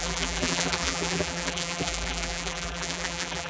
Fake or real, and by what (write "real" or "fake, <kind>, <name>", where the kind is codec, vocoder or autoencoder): fake, vocoder, BigVGAN v2